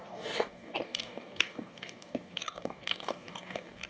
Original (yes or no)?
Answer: no